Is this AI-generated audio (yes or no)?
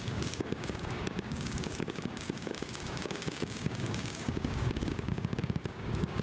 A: yes